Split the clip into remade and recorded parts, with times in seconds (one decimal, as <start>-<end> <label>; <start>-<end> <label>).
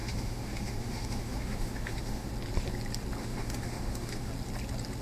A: 0.0-2.3 remade; 2.3-3.2 recorded; 3.2-4.3 remade; 4.3-5.0 recorded